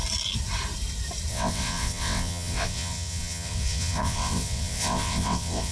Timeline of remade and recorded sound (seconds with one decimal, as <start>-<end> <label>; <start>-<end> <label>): 0.0-1.3 recorded; 1.3-5.7 remade

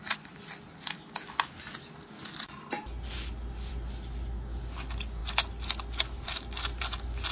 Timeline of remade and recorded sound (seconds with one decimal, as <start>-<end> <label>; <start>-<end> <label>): 0.0-7.3 recorded

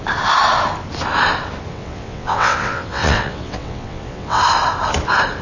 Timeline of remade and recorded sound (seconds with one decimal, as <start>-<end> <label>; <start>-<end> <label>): 0.0-1.7 recorded; 1.7-4.4 remade; 4.4-5.4 recorded

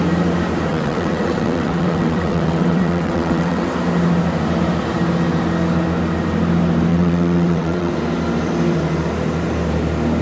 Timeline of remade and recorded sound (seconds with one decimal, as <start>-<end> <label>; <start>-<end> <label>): 0.0-0.7 recorded; 0.7-3.7 remade; 3.7-6.9 recorded; 6.9-7.9 remade; 7.9-10.2 recorded

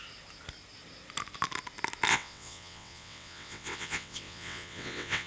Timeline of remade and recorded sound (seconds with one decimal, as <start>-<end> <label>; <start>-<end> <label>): 0.0-2.1 recorded; 2.1-5.3 remade

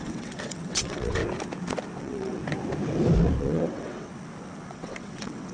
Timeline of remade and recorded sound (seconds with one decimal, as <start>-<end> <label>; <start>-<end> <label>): 0.0-1.2 remade; 1.2-2.0 recorded; 2.0-2.4 remade; 2.4-3.4 recorded; 3.4-4.1 remade; 4.1-4.7 recorded; 4.7-5.5 remade